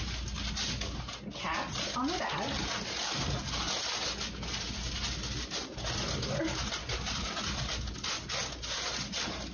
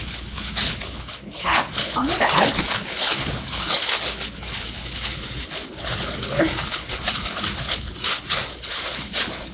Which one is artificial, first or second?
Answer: second